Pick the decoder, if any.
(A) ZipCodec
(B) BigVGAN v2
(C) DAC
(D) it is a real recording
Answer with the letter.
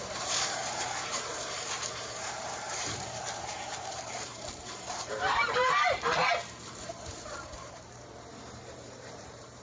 B